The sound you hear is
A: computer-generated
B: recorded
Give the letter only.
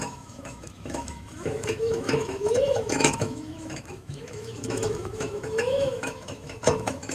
A